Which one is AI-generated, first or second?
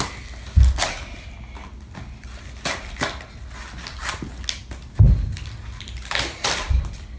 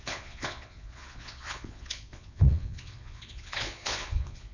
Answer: second